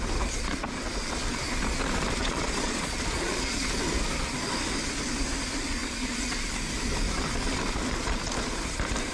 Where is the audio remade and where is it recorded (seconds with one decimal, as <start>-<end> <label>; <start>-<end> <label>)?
0.0-2.2 recorded; 2.2-3.6 remade; 3.6-9.1 recorded